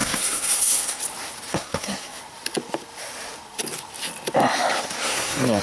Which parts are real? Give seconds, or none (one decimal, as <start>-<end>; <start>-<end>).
1.0-1.5; 2.2-5.0